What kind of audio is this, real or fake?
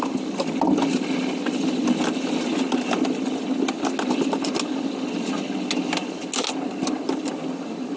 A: real